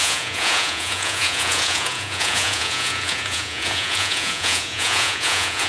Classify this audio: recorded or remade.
remade